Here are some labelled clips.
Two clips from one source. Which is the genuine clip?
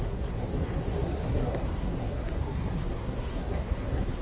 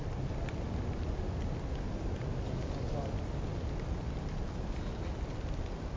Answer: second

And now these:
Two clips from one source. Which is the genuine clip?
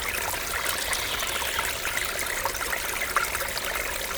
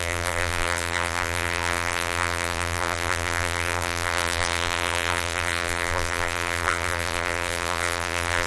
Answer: first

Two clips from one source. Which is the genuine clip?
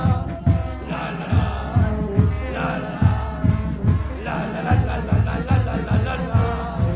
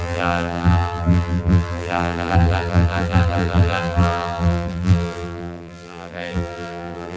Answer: first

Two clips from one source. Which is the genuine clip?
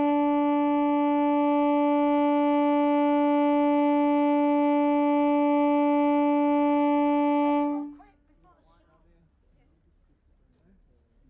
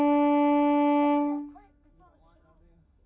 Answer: first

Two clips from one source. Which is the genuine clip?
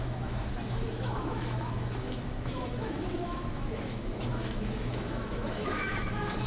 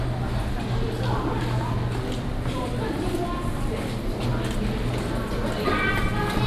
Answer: second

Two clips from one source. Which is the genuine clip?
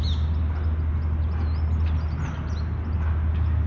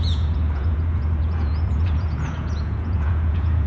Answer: first